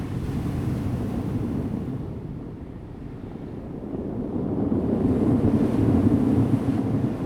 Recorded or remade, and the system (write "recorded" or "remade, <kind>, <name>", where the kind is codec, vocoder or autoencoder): recorded